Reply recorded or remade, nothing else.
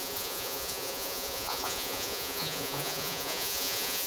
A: remade